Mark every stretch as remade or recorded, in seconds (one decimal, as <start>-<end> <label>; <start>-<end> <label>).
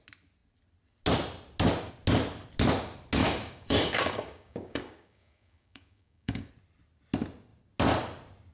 0.0-3.2 recorded; 3.2-6.5 remade; 6.5-8.5 recorded